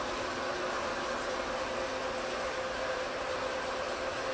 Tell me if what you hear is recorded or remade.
recorded